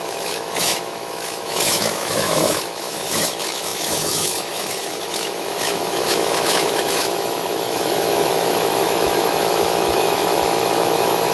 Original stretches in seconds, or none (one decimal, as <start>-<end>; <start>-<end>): none

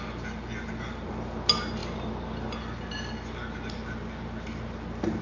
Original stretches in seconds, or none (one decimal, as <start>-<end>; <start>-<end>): 0.0-5.2

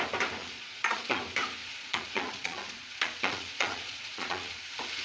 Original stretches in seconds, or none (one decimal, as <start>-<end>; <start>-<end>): 0.0-0.4; 1.2-1.6; 4.6-5.0

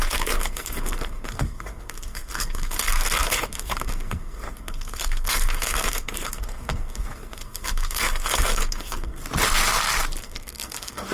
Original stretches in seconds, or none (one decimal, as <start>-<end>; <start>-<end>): 9.2-10.2